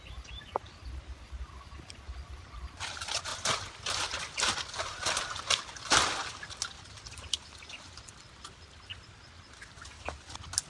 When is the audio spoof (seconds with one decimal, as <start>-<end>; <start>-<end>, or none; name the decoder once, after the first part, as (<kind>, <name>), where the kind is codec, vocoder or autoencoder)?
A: none